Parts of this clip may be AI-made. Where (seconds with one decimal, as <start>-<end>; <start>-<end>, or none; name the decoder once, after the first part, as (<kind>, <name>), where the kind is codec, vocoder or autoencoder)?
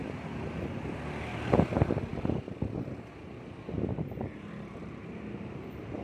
0.6-6.0 (vocoder, BigVGAN v2)